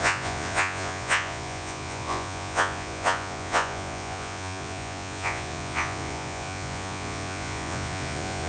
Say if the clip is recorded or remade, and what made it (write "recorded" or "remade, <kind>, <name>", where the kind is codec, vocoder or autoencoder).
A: remade, vocoder, Vocos